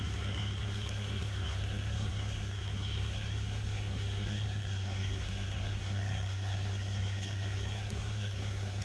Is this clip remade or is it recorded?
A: remade